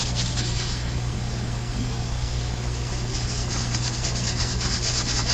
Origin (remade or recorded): remade